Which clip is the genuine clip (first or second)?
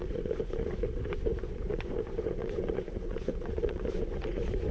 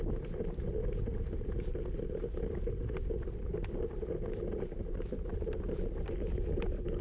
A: second